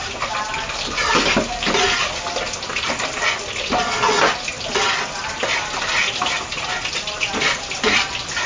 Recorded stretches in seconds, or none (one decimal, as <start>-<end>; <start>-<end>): 0.0-8.5